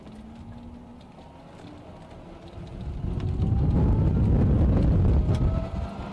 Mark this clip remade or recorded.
recorded